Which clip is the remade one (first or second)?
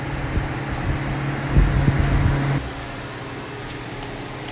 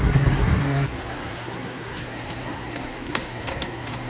second